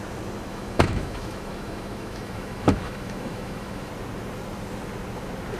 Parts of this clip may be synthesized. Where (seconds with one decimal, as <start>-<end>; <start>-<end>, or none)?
0.5-3.9